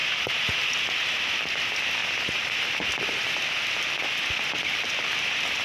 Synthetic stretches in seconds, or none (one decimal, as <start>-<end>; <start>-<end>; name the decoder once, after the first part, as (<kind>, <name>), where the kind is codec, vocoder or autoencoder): none